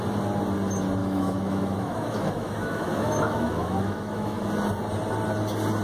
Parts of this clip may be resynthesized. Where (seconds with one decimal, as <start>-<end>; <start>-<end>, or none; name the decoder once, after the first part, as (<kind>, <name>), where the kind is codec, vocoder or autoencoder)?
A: 1.0-4.5 (autoencoder, DAC-VAE)